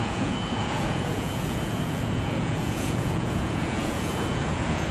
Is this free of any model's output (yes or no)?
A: no